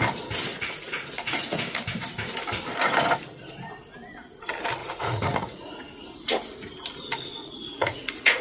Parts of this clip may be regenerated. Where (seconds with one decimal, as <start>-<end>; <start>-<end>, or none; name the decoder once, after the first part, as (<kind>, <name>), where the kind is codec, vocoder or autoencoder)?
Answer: 0.5-1.6 (vocoder, Vocos); 4.8-5.8; 7.4-8.4